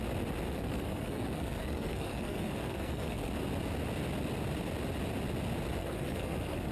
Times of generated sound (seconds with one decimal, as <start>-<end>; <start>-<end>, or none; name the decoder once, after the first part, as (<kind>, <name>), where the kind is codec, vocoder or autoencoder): 0.5-3.3 (codec, SNAC); 5.8-6.7

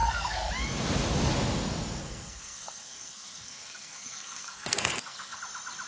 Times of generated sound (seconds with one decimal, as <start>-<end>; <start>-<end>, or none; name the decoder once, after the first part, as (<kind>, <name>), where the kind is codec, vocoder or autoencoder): 0.0-0.5 (codec, SNAC); 2.0-5.4

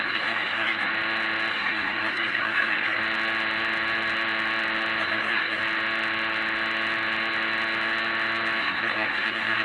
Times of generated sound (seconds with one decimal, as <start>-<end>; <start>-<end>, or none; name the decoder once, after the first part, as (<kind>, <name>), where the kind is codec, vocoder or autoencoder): 0.0-0.9 (codec, SNAC); 1.5-3.0; 5.0-5.6; 8.6-9.6

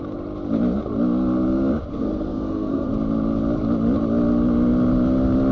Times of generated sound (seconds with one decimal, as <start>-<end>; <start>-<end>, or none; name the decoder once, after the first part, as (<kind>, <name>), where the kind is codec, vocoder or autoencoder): 1.9-2.9 (codec, SNAC)

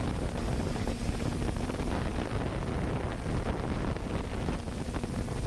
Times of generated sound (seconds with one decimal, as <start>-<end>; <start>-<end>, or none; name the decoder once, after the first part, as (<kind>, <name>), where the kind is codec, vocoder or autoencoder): none